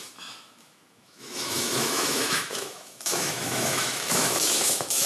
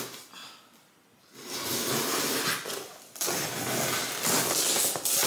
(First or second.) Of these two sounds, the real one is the second